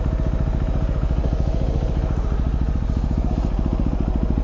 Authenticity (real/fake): real